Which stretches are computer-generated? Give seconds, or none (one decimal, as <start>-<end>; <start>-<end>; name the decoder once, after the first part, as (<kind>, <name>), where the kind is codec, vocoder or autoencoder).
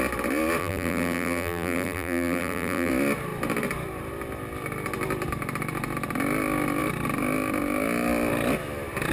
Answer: 0.6-2.9 (vocoder, BigVGAN v2)